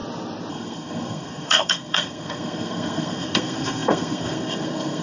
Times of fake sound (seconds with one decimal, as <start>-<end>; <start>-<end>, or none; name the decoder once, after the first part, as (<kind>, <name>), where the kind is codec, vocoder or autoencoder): 0.5-5.0 (codec, SNAC)